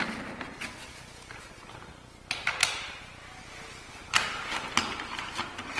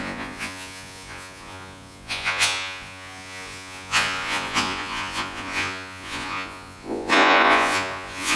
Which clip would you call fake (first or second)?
second